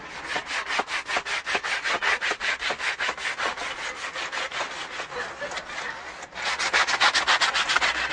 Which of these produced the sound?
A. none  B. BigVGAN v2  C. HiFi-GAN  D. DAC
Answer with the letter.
A